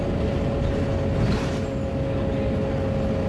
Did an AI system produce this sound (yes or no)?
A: no